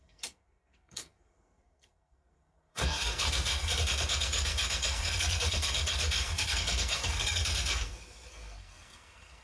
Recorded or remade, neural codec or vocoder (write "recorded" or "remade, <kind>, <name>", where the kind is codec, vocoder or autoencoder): remade, codec, SNAC